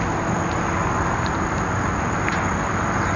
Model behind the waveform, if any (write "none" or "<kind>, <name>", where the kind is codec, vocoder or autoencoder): none